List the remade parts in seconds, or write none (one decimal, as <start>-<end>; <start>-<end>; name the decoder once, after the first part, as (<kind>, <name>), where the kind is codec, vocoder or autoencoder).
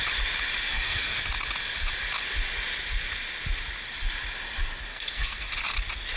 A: 0.7-1.2 (codec, SNAC); 4.9-5.5